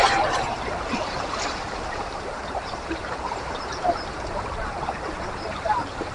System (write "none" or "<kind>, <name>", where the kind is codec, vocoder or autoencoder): vocoder, BigVGAN v2